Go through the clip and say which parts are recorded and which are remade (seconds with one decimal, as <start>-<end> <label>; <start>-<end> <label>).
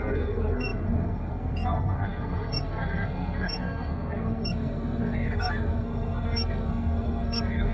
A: 0.0-7.7 remade